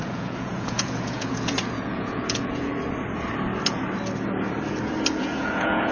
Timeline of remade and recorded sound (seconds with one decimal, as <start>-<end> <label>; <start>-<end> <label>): 0.0-2.7 remade; 2.7-5.2 recorded; 5.2-5.9 remade